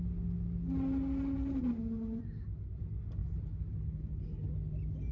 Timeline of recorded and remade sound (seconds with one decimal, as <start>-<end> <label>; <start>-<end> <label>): 0.0-5.1 recorded